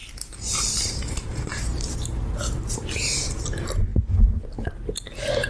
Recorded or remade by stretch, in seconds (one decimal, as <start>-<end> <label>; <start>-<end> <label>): 0.0-3.3 remade; 3.3-5.5 recorded